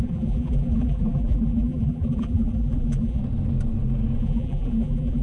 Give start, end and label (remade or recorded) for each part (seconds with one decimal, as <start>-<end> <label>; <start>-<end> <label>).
0.0-3.2 remade; 3.2-4.2 recorded; 4.2-5.2 remade

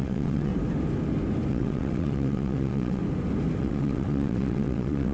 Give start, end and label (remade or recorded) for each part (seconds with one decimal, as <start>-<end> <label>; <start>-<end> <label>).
0.0-0.5 remade; 0.5-1.5 recorded; 1.5-3.0 remade; 3.0-3.6 recorded; 3.6-5.1 remade

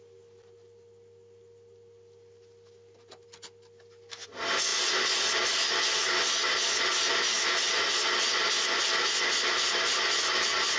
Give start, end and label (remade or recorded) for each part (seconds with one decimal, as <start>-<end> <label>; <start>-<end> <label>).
0.0-10.8 recorded

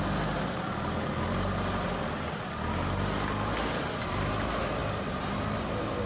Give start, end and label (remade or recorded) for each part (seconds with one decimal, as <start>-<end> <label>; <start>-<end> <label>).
0.0-6.1 recorded

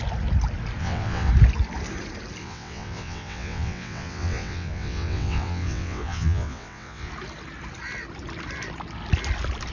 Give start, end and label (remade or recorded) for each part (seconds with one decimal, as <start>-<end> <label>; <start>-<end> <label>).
0.0-0.8 recorded; 0.8-1.3 remade; 1.3-2.4 recorded; 2.4-7.1 remade; 7.1-9.7 recorded

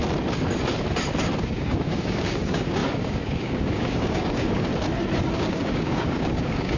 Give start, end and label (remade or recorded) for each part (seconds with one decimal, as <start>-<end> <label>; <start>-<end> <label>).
0.0-1.4 recorded; 1.4-4.7 remade; 4.7-5.3 recorded; 5.3-6.8 remade

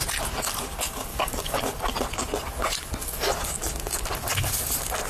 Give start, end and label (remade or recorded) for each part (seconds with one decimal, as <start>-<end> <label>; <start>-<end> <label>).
0.0-1.1 recorded; 1.1-1.6 remade; 1.6-5.1 recorded